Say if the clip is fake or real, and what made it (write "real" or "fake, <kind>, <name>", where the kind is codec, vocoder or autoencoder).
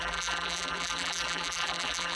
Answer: fake, vocoder, BigVGAN v2